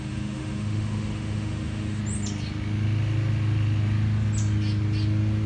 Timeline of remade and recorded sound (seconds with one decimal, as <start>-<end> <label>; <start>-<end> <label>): 0.0-2.0 remade; 2.0-5.5 recorded